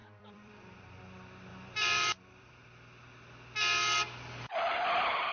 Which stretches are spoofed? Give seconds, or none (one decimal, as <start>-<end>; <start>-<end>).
0.0-1.0; 1.5-2.5